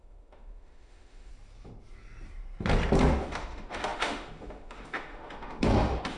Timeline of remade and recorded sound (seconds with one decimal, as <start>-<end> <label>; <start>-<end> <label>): 0.0-1.3 remade; 1.3-3.2 recorded; 3.2-6.2 remade